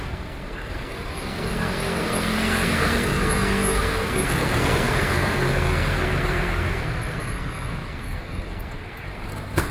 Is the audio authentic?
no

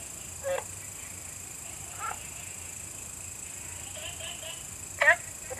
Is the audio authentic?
yes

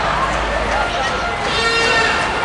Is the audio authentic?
yes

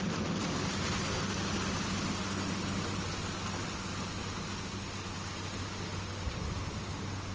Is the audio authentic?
yes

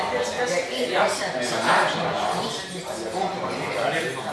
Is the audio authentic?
yes